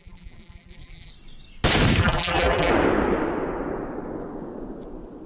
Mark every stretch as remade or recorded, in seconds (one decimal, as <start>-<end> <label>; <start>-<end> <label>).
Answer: 0.0-1.1 remade; 1.1-2.0 recorded; 2.0-2.7 remade; 2.7-5.3 recorded